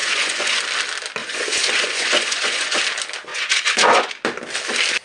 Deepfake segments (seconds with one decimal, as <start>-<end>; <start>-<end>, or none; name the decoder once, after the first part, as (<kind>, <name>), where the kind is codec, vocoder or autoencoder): 0.0-0.6 (vocoder, Vocos); 1.2-2.8; 3.3-4.1